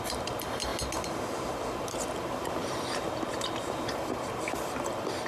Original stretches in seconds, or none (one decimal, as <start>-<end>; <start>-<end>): 0.7-1.4